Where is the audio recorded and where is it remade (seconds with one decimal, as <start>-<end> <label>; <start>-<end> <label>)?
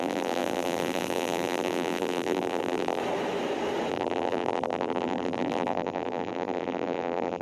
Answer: 0.0-3.0 remade; 3.0-3.9 recorded; 3.9-7.4 remade